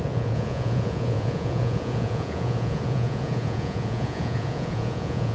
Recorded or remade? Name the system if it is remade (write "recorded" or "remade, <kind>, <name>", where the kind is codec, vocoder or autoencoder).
remade, vocoder, Vocos